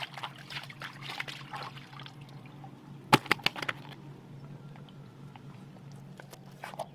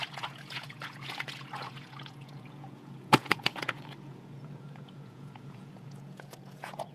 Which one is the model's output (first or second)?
second